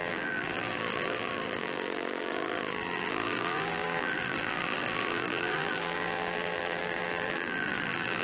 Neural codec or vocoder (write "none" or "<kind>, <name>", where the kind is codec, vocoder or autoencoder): vocoder, BigVGAN v2